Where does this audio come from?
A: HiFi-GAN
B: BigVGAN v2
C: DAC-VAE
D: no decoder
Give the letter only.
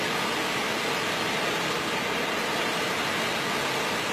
D